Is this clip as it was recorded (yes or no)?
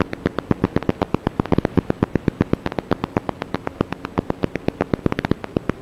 yes